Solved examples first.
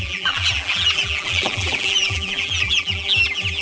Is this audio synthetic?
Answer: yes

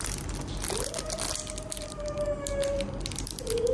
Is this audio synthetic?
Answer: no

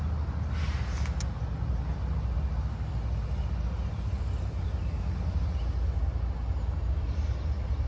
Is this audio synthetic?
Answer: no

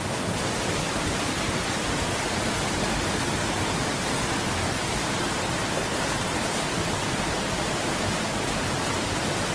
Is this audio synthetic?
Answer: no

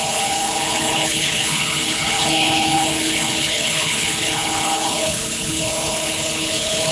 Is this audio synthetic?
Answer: yes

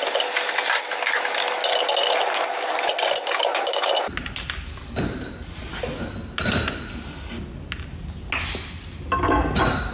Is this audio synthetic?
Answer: no